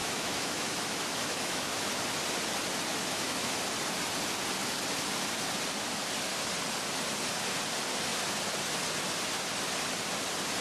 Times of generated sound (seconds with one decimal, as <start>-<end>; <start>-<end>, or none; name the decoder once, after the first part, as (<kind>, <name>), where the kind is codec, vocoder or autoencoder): 0.0-1.9 (autoencoder, DAC-VAE); 2.9-3.6